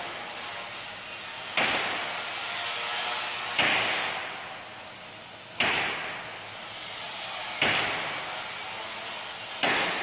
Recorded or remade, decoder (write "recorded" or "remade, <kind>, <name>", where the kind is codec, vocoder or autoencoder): recorded